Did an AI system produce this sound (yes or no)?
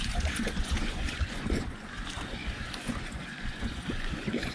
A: yes